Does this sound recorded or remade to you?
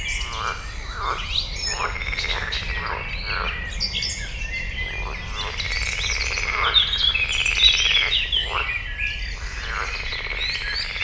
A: recorded